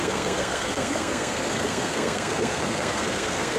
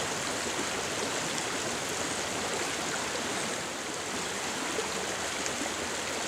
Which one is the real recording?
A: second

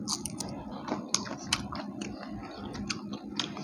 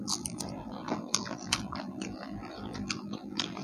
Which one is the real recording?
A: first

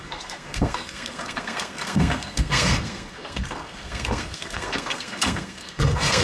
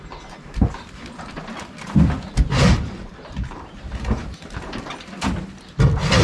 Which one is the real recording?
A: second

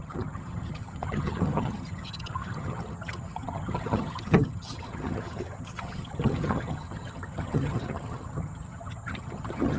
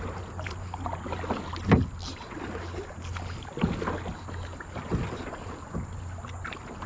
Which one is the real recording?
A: second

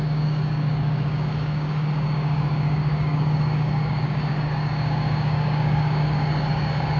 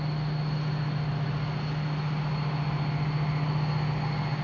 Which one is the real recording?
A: second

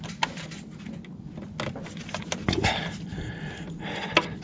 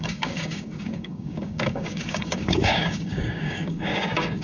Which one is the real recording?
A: first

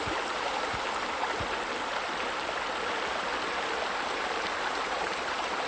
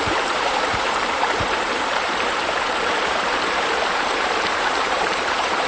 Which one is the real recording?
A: first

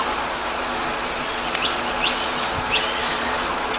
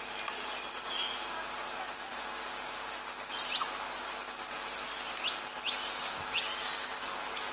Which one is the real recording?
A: second